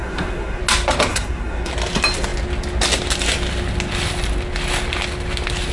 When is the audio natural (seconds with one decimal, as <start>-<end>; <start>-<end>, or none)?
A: 0.6-1.1; 1.7-5.7